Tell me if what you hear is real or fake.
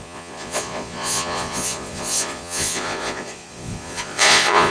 fake